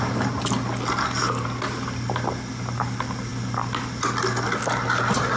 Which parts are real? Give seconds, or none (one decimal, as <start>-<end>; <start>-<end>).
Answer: 0.0-5.4